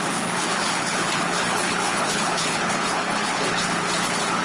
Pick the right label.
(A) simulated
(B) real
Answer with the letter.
A